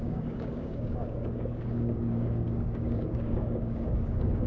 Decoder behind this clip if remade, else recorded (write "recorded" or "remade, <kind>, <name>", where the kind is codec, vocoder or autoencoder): remade, codec, DAC